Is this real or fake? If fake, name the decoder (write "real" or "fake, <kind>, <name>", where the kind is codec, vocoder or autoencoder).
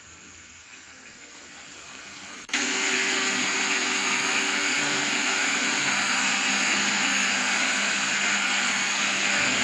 fake, codec, SNAC